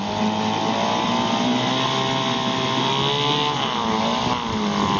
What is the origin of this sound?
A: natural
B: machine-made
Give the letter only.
A